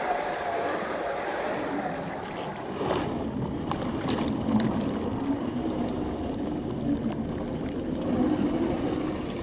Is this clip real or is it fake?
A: real